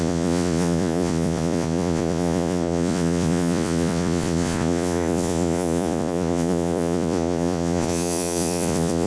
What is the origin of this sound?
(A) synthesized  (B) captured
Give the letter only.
A